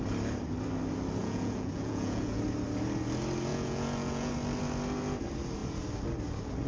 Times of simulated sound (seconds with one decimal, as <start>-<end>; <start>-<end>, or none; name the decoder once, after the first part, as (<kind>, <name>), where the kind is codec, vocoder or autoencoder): 1.2-2.4 (vocoder, Vocos); 3.5-4.3